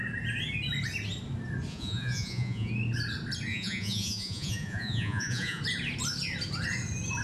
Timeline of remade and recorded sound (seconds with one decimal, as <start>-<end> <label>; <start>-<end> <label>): 0.0-1.7 recorded; 1.7-2.7 remade; 2.7-3.5 recorded; 3.5-5.6 remade; 5.6-7.2 recorded